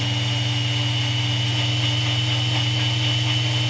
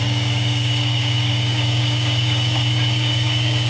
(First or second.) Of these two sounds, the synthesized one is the second